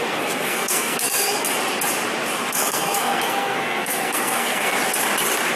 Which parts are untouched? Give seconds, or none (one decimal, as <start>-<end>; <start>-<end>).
1.6-2.5; 4.8-5.6